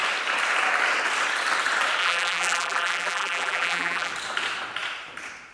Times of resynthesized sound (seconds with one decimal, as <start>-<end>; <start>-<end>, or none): 2.0-4.1